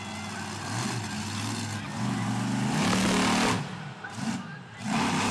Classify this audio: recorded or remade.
recorded